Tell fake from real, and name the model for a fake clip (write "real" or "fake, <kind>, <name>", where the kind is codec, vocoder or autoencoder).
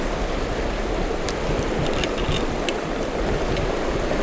real